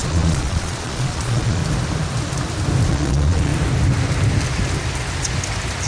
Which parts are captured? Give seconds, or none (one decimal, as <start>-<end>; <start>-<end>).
1.6-2.9; 3.5-5.9